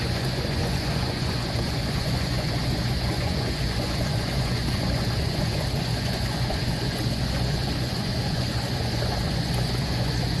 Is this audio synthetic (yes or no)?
yes